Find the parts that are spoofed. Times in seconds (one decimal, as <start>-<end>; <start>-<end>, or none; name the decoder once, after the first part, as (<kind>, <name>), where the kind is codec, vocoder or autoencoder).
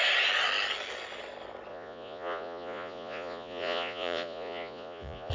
1.7-5.3 (vocoder, Vocos)